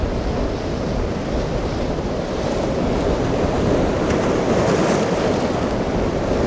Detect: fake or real real